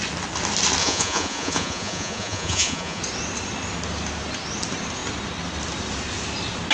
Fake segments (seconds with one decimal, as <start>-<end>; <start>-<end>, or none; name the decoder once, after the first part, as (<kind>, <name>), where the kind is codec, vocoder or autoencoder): 0.8-3.0 (vocoder, Vocos)

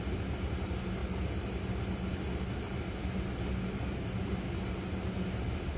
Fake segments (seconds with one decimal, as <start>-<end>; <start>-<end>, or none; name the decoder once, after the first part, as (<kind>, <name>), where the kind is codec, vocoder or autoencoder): none

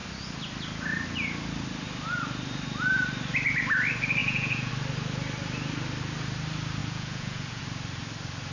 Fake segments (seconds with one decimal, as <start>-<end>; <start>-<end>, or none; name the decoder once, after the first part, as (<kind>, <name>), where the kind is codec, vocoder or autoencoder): 4.2-4.7 (vocoder, Vocos); 6.8-7.6

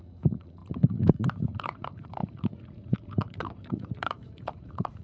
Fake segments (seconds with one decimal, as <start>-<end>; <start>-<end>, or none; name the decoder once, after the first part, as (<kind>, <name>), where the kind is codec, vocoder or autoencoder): 0.0-5.0 (vocoder, Vocos)